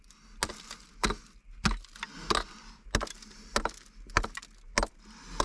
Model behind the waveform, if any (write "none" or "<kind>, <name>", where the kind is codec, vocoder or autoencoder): none